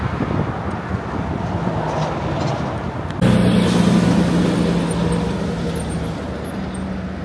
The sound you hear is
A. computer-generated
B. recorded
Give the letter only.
B